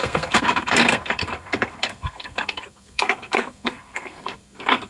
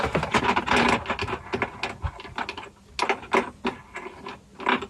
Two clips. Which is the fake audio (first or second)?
first